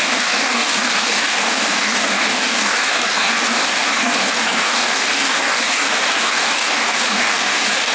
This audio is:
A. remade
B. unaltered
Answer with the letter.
A